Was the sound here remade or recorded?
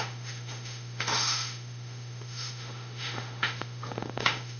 remade